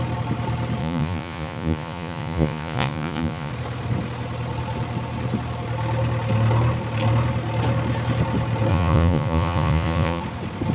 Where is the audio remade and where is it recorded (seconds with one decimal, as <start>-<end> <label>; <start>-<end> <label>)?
0.0-0.8 recorded; 0.8-3.5 remade; 3.5-8.7 recorded; 8.7-10.2 remade; 10.2-10.7 recorded